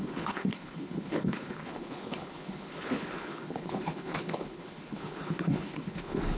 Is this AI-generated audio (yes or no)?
yes